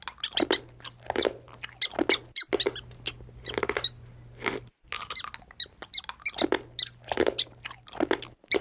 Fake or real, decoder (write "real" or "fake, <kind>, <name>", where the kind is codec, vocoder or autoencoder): real